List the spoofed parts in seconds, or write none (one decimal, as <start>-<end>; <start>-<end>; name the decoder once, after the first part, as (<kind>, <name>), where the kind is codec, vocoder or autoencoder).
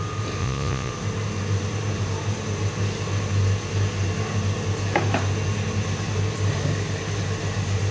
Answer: 0.4-0.9 (vocoder, Vocos)